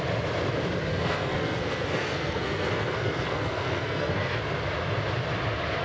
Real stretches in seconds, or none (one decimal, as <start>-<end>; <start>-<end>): 0.0-0.9; 4.4-5.8

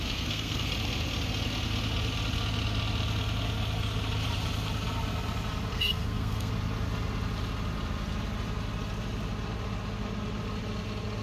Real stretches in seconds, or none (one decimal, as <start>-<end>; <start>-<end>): 0.7-5.7; 6.5-11.2

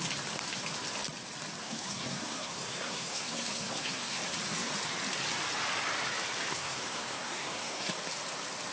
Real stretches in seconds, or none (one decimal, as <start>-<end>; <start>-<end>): 0.0-1.6; 4.2-6.5; 7.9-8.7

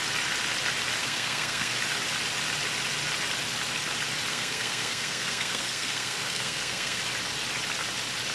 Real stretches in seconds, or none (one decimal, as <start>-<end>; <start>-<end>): 0.0-1.0; 1.7-4.3; 7.0-8.3